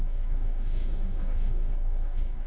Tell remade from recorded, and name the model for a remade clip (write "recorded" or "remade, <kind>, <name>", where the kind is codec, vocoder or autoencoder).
remade, codec, DAC